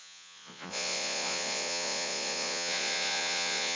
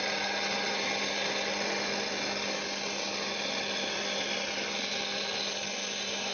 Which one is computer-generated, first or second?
first